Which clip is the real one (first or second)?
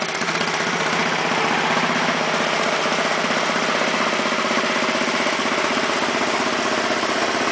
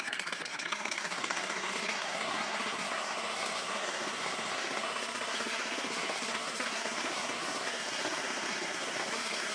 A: first